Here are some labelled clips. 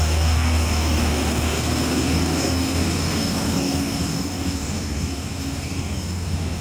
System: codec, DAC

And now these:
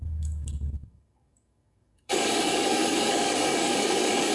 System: codec, DAC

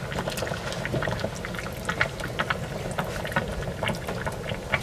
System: none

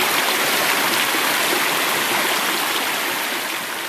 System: none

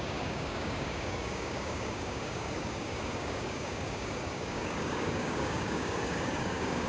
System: codec, DAC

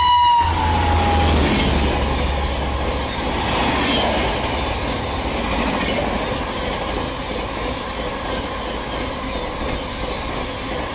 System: none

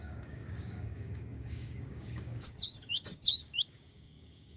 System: codec, DAC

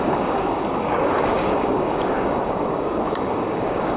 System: codec, DAC